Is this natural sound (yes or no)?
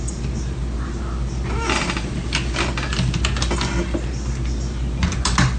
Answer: yes